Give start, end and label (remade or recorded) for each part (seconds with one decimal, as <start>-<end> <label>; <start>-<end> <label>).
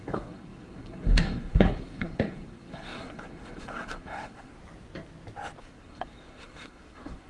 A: 0.0-4.6 remade; 4.6-5.6 recorded; 5.6-7.3 remade